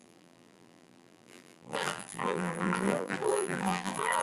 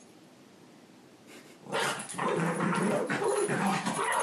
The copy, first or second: first